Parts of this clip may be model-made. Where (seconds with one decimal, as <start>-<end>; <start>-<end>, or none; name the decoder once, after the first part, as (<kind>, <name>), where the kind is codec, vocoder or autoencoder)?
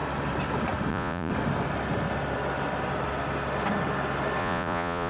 0.9-1.3 (vocoder, Vocos); 4.4-5.1